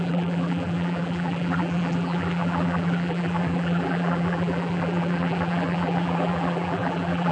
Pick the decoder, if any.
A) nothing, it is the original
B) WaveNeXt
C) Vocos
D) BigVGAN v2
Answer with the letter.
D